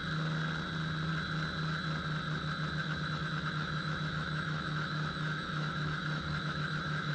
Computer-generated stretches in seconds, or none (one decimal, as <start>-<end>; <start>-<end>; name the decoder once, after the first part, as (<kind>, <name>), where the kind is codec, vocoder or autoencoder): 2.8-7.1 (autoencoder, DAC-VAE)